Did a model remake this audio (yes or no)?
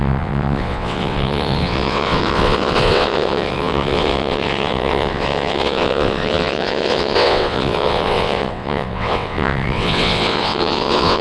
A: yes